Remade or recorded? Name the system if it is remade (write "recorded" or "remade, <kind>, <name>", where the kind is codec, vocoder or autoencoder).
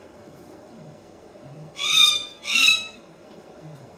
remade, codec, SNAC